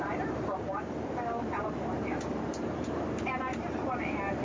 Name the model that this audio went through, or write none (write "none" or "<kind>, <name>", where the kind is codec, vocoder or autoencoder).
vocoder, BigVGAN v2